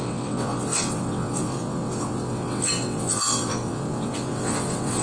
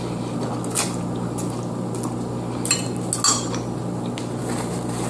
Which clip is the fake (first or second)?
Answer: first